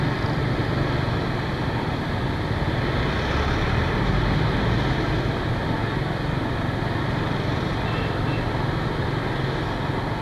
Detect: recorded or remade recorded